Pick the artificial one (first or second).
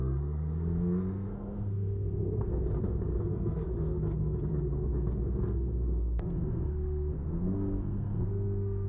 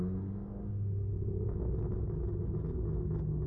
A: first